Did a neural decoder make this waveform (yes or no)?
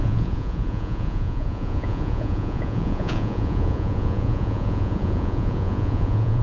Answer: yes